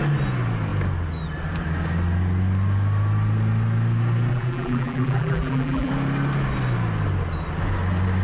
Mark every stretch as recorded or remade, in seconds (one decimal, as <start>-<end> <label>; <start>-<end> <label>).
0.0-4.3 recorded; 4.3-5.9 remade; 5.9-8.2 recorded